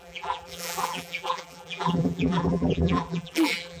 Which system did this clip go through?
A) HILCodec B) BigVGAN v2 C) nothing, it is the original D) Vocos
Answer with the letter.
B